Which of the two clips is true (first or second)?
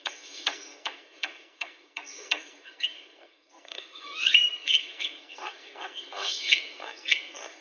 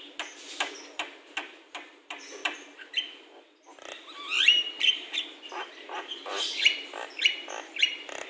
second